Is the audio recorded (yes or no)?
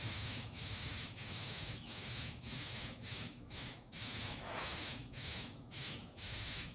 no